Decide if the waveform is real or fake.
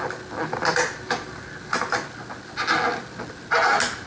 real